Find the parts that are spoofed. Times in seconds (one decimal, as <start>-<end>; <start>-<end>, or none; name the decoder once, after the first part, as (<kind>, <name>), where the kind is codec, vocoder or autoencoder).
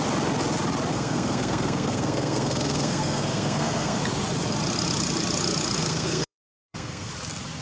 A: 0.9-4.0 (codec, SNAC); 5.8-7.1